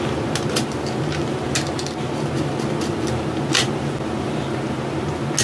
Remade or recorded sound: recorded